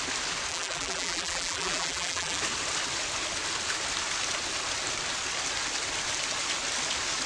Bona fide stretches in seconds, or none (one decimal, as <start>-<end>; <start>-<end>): 0.0-0.5; 2.4-7.3